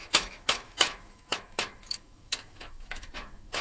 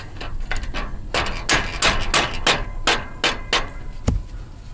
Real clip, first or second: second